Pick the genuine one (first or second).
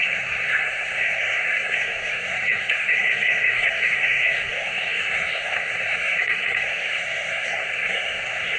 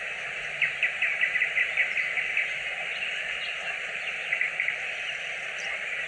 second